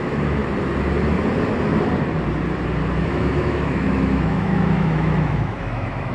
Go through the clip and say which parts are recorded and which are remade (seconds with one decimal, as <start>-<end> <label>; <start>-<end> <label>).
0.0-0.4 remade; 0.4-3.1 recorded; 3.1-6.1 remade